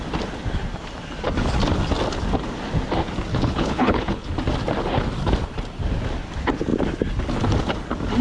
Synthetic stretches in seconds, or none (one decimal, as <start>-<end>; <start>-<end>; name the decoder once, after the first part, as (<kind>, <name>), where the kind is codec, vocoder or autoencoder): 3.3-4.3 (codec, HILCodec)